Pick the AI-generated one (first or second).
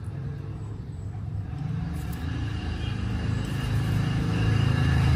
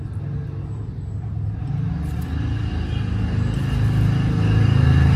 first